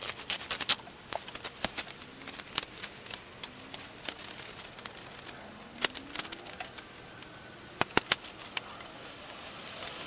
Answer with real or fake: real